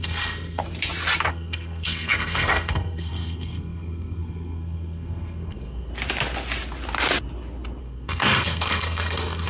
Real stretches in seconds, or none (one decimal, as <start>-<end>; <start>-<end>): 0.6-1.3; 5.9-7.8